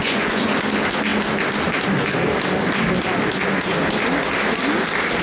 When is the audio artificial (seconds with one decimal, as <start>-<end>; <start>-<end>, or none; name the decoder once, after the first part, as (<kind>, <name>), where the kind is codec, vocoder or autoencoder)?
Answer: 0.0-0.5 (vocoder, Vocos)